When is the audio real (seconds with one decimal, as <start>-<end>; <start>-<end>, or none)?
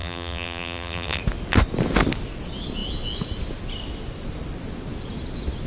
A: 1.2-5.7